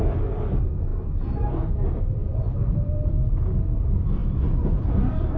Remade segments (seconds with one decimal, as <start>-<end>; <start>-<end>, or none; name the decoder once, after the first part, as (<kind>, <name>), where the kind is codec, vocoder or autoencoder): 2.2-3.1 (vocoder, BigVGAN v2)